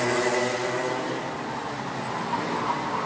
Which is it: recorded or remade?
recorded